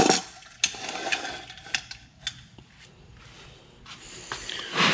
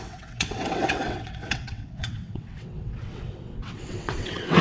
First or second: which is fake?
second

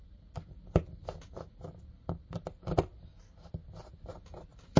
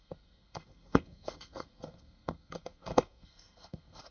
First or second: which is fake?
second